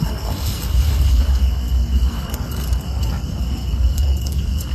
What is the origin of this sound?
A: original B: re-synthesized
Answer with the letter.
B